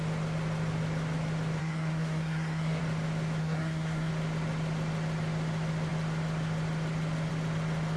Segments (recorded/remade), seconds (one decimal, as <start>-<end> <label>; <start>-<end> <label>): 0.0-1.6 recorded; 1.6-2.8 remade; 2.8-3.4 recorded; 3.4-4.1 remade; 4.1-8.0 recorded